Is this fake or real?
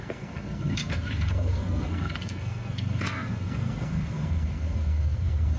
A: fake